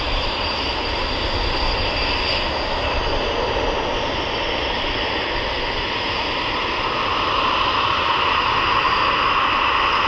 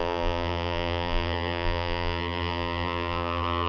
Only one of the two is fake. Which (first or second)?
second